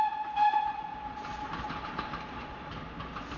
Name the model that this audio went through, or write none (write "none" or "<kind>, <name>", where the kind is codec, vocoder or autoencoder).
none